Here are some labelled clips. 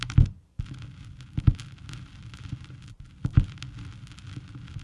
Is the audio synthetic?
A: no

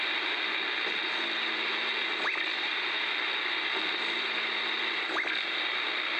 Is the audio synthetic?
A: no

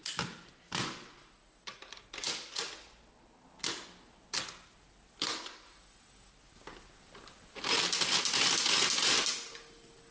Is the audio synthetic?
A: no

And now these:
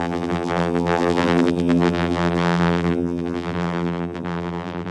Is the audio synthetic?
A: yes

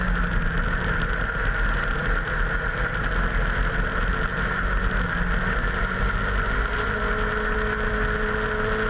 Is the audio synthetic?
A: no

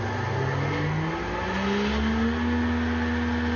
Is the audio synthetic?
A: no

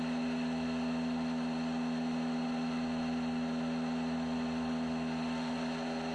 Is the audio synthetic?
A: no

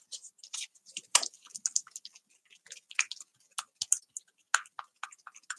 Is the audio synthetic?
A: no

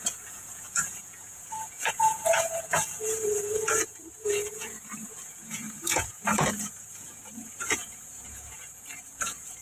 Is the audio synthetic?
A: yes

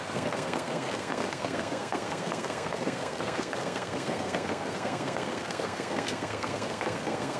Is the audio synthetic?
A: yes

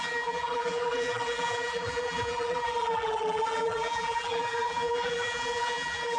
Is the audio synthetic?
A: yes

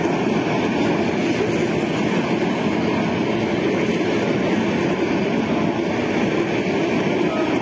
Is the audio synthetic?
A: no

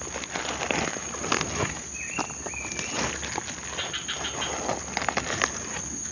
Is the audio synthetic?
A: no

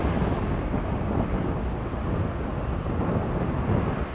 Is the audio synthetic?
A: no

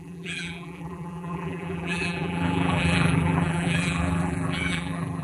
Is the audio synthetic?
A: yes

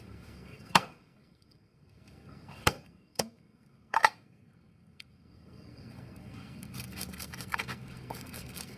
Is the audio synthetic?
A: yes